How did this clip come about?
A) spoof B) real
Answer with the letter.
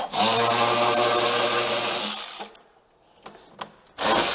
B